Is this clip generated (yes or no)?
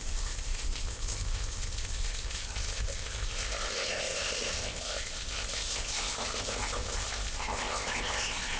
yes